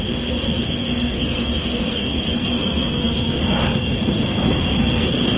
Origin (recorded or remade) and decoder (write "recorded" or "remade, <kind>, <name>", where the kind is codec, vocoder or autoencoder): remade, codec, SNAC